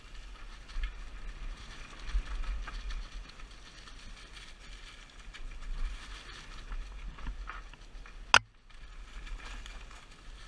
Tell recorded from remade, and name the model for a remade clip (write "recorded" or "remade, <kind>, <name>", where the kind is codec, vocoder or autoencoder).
recorded